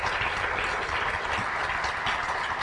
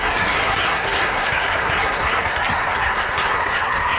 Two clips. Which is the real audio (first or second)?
first